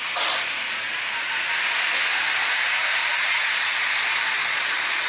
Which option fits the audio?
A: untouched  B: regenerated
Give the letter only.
A